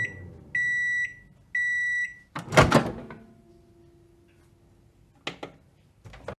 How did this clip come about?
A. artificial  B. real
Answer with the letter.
B